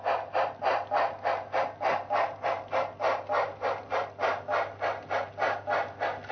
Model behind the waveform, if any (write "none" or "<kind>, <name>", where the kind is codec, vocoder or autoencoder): none